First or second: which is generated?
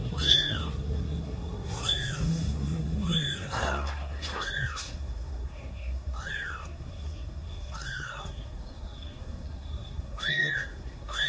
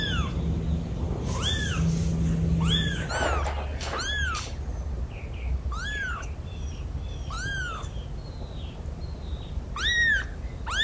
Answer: first